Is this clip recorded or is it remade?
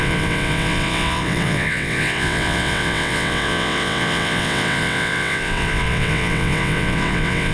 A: remade